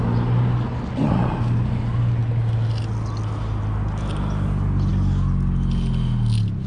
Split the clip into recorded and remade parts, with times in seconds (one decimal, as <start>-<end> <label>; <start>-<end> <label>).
0.0-6.7 recorded